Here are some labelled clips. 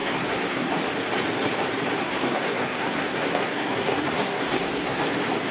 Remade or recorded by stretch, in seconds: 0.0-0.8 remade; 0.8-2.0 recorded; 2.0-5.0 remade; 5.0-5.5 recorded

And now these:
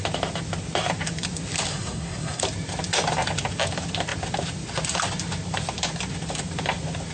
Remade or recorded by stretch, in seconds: 0.0-1.7 recorded; 1.7-2.4 remade; 2.4-7.1 recorded

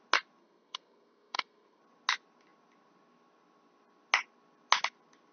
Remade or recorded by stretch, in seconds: 0.0-0.4 recorded; 0.4-1.8 remade; 1.8-5.3 recorded

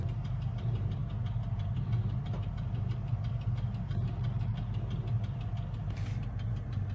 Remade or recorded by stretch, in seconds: 0.0-6.9 recorded

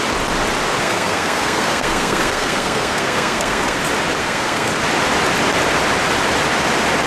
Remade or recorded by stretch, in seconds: 0.0-0.8 recorded; 0.8-3.8 remade; 3.8-4.2 recorded; 4.2-4.7 remade; 4.7-7.1 recorded

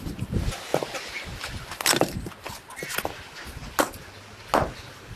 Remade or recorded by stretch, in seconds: 0.0-5.2 recorded

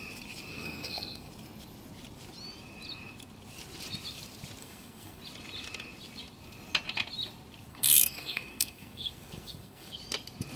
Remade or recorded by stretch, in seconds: 0.0-0.5 recorded; 0.5-1.3 remade; 1.3-4.6 recorded; 4.6-5.2 remade; 5.2-7.7 recorded; 7.7-10.0 remade; 10.0-10.6 recorded

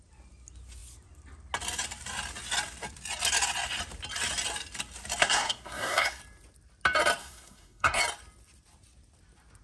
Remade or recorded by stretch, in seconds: 0.0-5.2 recorded; 5.2-6.2 remade; 6.2-7.2 recorded; 7.2-8.0 remade; 8.0-9.6 recorded